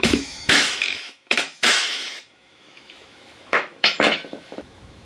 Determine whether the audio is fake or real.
fake